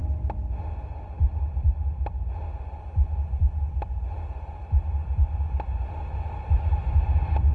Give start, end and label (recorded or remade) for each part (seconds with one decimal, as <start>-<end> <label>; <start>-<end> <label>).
0.0-7.5 recorded